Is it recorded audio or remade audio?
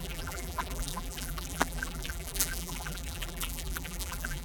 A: remade